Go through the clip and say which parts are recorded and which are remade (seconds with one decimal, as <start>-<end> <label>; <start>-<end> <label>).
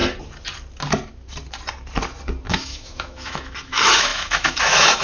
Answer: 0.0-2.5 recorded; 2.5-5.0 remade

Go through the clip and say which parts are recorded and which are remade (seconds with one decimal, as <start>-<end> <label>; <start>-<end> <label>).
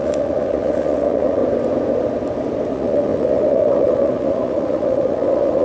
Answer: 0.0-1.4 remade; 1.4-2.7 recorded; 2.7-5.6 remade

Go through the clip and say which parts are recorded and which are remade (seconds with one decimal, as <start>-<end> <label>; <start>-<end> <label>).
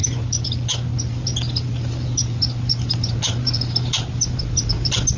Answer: 0.0-5.2 recorded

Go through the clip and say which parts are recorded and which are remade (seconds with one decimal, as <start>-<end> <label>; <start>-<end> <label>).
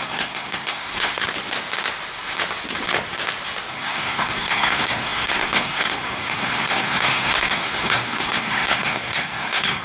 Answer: 0.0-1.2 remade; 1.2-3.7 recorded; 3.7-9.8 remade